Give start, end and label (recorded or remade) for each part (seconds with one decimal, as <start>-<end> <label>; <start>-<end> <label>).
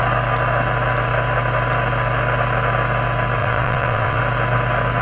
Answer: 0.0-3.4 recorded; 3.4-4.2 remade; 4.2-5.0 recorded